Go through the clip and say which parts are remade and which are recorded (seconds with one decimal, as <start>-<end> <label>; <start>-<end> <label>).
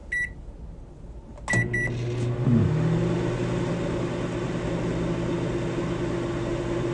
0.0-6.9 recorded